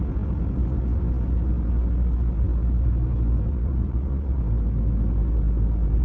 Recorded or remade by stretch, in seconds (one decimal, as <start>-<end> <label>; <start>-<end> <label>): 0.0-3.5 recorded; 3.5-4.4 remade; 4.4-6.0 recorded